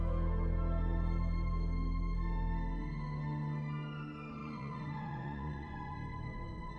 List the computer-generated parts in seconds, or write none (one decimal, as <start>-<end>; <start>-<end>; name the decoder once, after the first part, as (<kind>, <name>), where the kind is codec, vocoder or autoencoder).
4.4-6.8 (vocoder, Vocos)